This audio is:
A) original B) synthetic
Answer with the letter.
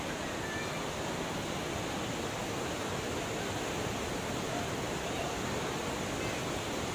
A